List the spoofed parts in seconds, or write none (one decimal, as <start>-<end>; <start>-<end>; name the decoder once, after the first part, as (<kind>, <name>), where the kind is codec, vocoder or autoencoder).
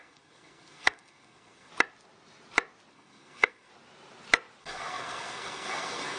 0.0-1.7 (codec, SNAC); 2.9-3.7; 4.6-6.2